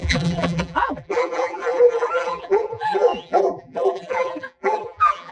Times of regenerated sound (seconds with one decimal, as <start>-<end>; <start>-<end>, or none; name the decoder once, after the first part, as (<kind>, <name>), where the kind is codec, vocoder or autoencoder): 0.0-5.3 (vocoder, BigVGAN v2)